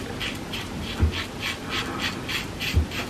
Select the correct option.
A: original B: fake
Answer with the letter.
A